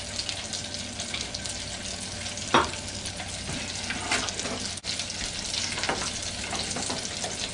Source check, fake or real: real